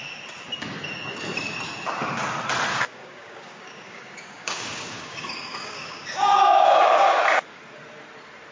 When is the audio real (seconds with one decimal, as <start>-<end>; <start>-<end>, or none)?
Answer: 0.0-2.7; 7.6-8.5